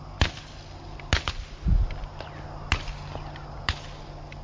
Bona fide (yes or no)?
yes